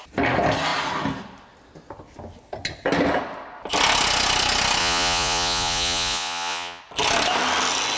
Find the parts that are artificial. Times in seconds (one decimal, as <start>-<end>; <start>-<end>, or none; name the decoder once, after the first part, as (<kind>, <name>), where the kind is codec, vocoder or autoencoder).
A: 4.8-6.8 (vocoder, Vocos)